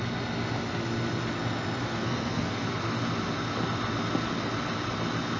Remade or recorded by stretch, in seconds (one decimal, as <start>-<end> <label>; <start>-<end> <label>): 0.0-1.8 recorded; 1.8-2.6 remade; 2.6-5.4 recorded